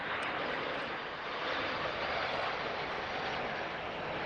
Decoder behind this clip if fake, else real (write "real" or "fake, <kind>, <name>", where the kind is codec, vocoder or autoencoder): real